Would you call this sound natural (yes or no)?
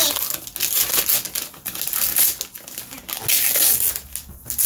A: yes